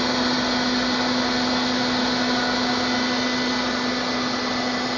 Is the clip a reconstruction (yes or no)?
no